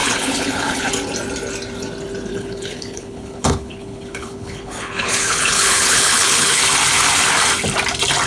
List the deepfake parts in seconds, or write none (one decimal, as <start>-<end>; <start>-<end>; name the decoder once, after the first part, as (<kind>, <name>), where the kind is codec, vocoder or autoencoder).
0.0-0.9 (codec, HILCodec); 2.3-6.6